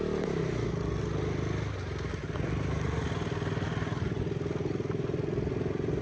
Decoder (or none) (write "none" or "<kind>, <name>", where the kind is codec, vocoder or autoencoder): none